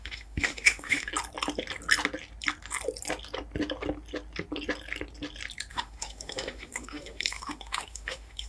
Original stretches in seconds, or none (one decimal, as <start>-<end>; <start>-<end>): 1.1-5.7